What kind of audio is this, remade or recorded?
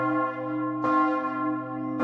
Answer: recorded